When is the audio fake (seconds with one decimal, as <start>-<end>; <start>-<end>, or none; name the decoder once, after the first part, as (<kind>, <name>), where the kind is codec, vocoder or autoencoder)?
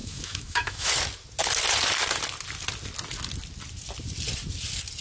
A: 0.0-0.9 (autoencoder, DAC-VAE)